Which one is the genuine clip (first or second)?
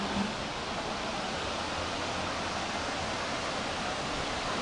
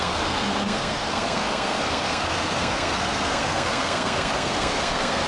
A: first